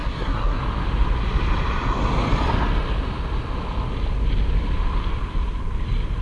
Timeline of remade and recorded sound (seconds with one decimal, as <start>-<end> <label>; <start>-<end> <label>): 0.0-0.6 remade; 0.6-6.2 recorded